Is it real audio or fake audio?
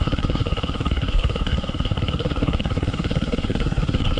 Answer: fake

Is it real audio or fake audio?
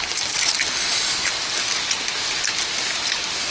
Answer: real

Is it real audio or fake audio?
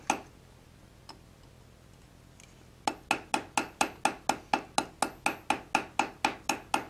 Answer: real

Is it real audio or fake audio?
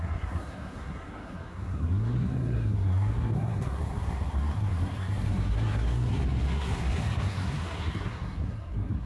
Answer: fake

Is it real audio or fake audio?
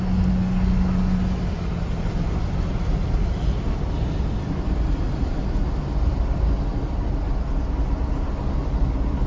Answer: real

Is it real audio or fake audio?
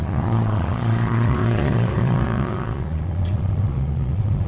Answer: fake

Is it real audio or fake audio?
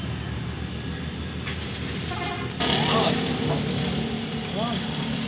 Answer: real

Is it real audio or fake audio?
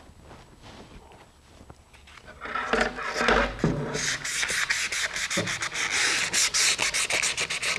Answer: real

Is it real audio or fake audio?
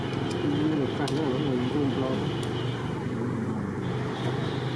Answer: real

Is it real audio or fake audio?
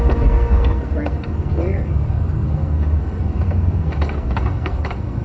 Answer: fake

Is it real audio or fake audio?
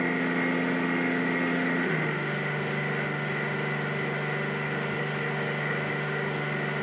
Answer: fake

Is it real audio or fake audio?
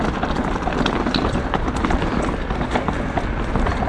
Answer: real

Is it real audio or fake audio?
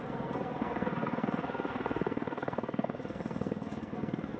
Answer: fake